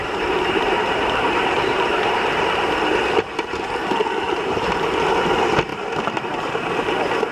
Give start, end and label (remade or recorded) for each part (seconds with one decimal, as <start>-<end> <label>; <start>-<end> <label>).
0.0-2.6 remade; 2.6-5.7 recorded; 5.7-6.5 remade; 6.5-7.3 recorded